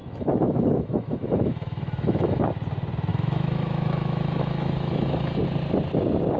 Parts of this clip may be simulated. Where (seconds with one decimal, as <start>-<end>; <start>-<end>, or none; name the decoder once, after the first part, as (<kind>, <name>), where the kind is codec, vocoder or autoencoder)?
0.0-2.4 (autoencoder, DAC-VAE); 3.1-5.4